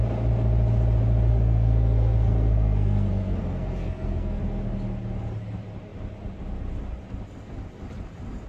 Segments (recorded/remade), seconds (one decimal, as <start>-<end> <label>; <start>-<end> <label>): 0.0-1.3 recorded; 1.3-4.4 remade; 4.4-8.5 recorded